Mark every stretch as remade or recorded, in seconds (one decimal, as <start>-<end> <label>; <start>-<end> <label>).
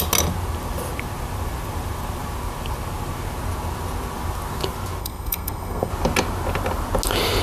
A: 0.0-5.0 recorded; 5.0-5.9 remade; 5.9-7.4 recorded